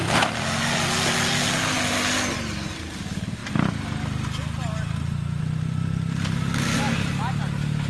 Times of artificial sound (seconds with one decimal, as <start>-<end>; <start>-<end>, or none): none